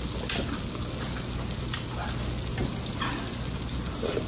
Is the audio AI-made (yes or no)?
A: no